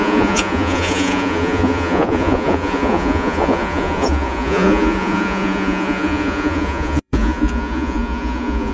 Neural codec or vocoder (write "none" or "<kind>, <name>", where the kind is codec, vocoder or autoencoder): vocoder, Vocos